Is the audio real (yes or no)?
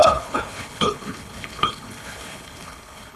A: no